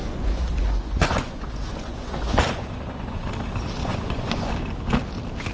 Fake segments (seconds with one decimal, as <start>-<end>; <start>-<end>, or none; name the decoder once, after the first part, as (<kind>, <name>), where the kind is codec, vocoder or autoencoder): 0.0-3.3 (vocoder, Vocos); 3.8-4.5